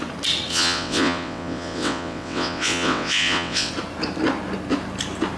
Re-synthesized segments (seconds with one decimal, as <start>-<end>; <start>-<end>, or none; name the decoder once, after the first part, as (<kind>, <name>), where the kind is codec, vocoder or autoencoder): 0.5-3.7 (vocoder, WaveNeXt)